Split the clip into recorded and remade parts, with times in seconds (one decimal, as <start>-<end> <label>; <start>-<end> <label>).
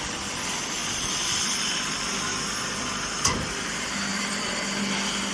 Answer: 0.0-0.8 recorded; 0.8-3.2 remade; 3.2-4.1 recorded; 4.1-4.8 remade; 4.8-5.3 recorded